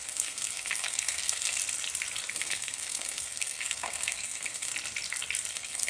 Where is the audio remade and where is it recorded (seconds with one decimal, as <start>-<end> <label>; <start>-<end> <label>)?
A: 0.0-1.6 remade; 1.6-2.3 recorded; 2.3-4.7 remade; 4.7-5.5 recorded; 5.5-5.9 remade